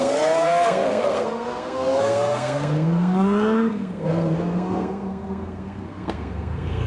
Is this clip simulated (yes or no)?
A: yes